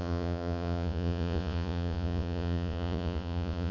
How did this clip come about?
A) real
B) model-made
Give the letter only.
B